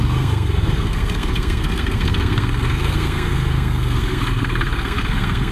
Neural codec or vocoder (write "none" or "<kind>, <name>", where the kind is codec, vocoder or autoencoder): codec, SNAC